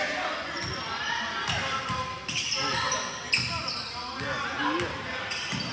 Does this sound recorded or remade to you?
recorded